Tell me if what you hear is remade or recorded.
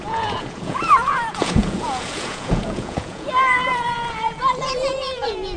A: remade